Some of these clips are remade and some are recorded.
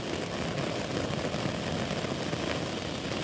recorded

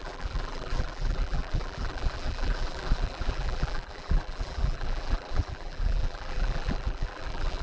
remade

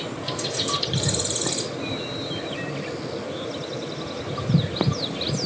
recorded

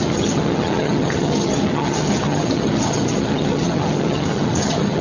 remade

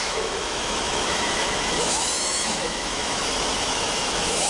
remade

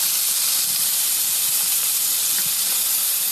remade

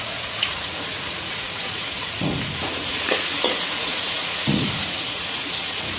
remade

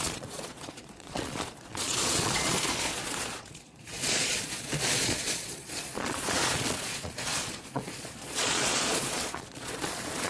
remade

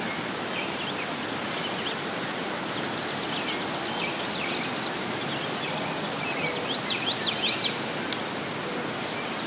recorded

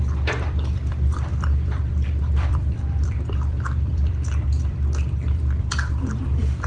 remade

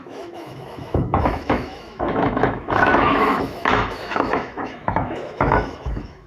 remade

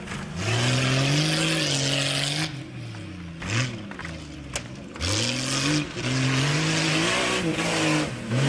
recorded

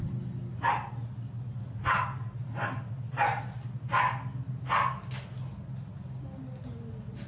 recorded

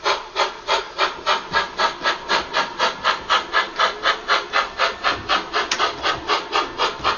recorded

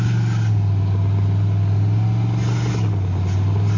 recorded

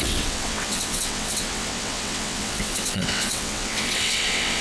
remade